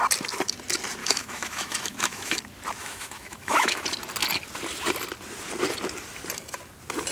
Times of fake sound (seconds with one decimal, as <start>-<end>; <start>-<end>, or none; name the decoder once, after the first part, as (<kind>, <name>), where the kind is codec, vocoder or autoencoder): 1.0-2.4 (autoencoder, DAC-VAE); 2.8-3.8